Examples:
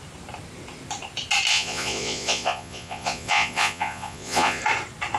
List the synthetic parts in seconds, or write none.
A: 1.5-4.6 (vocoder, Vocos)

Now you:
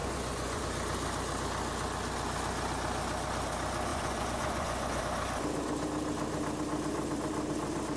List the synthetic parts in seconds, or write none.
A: 0.0-0.6 (vocoder, Vocos); 3.9-5.0

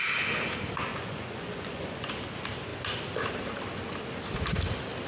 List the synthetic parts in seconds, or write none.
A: 0.9-2.1 (vocoder, Vocos)